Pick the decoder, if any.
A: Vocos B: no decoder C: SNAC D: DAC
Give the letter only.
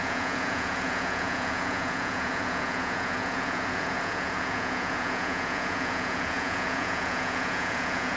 A